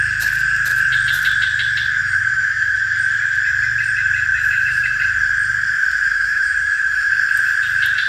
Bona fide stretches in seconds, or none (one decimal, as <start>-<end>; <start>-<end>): 0.0-2.0; 2.9-4.3; 5.0-6.1; 7.1-8.1